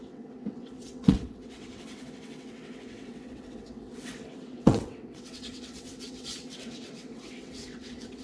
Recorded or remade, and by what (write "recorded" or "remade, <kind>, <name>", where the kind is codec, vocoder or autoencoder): remade, vocoder, WaveNeXt